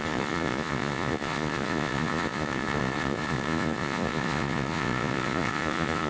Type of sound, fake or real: fake